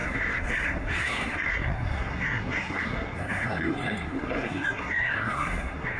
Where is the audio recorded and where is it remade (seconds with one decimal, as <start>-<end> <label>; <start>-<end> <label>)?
0.0-6.0 remade